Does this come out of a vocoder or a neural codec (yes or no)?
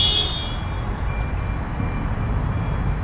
no